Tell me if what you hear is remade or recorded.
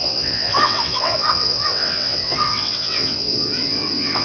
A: remade